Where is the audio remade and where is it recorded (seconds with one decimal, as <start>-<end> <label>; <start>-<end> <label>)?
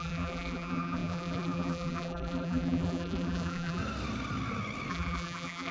0.0-3.8 remade; 3.8-4.9 recorded; 4.9-5.7 remade